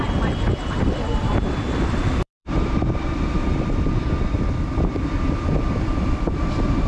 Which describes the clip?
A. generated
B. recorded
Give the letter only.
A